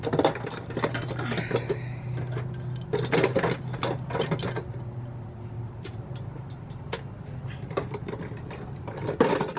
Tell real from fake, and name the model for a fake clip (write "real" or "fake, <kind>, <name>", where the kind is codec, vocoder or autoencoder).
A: real